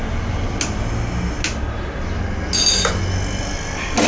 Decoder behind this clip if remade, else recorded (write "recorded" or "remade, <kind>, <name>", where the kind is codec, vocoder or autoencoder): recorded